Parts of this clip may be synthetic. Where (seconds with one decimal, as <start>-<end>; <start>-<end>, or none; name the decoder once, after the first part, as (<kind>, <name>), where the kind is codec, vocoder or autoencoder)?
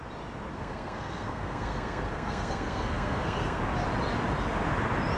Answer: 0.5-3.6 (codec, SNAC)